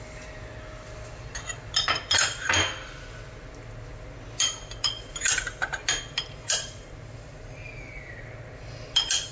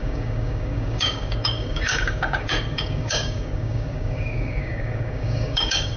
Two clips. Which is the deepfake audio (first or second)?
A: second